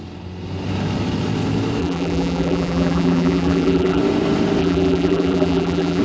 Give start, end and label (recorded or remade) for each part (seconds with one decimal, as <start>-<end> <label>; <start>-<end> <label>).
0.0-1.8 recorded; 1.8-4.0 remade; 4.0-4.6 recorded; 4.6-6.0 remade